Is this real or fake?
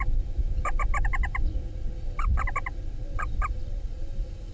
real